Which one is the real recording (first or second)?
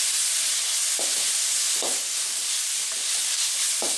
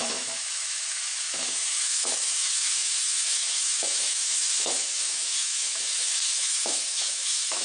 first